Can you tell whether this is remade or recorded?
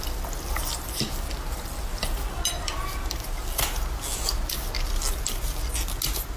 recorded